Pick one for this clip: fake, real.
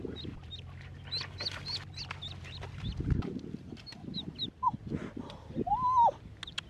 real